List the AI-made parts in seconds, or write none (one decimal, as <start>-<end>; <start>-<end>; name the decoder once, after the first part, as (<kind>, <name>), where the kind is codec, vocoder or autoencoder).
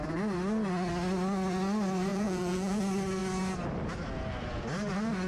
2.1-2.8 (vocoder, Vocos)